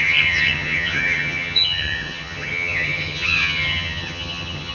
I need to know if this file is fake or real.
fake